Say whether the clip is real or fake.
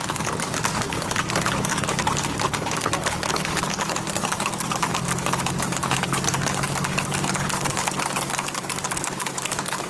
fake